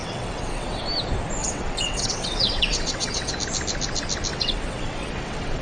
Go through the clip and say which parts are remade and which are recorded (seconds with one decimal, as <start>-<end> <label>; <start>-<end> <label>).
0.0-0.8 remade; 0.8-1.4 recorded; 1.4-3.3 remade; 3.3-4.3 recorded; 4.3-5.6 remade